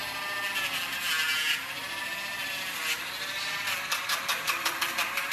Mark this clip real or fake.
real